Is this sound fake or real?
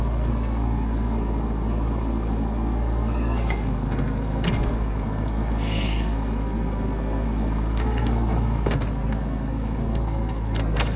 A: fake